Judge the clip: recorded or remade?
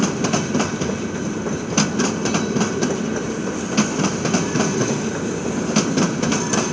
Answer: recorded